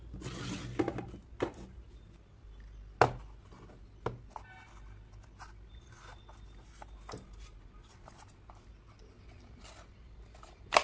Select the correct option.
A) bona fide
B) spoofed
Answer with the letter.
A